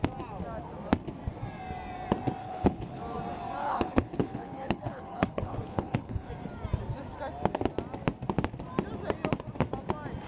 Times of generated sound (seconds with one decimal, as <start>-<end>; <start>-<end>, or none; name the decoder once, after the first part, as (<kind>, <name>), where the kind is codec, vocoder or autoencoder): 2.4-3.0 (codec, HILCodec); 3.6-6.3